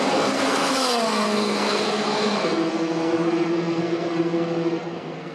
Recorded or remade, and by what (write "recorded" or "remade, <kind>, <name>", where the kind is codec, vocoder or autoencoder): remade, codec, SNAC